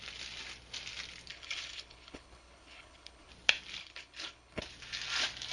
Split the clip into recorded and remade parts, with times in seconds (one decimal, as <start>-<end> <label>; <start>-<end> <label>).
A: 0.0-1.3 recorded; 1.3-3.3 remade; 3.3-3.8 recorded; 3.8-4.6 remade; 4.6-5.5 recorded